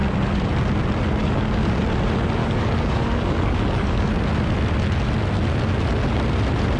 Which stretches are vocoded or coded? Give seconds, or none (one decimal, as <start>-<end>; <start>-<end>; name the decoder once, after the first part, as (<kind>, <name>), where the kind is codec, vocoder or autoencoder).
1.2-1.8 (codec, DAC); 2.4-4.1